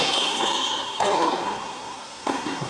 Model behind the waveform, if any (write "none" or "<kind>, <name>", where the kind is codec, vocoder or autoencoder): codec, SNAC